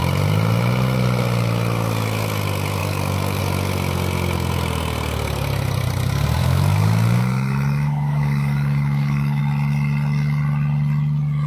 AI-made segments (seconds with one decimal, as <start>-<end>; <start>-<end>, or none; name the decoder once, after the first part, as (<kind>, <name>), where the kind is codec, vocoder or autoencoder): 2.8-3.4 (codec, DAC); 6.4-9.4